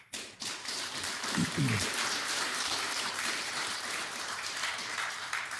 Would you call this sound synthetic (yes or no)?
yes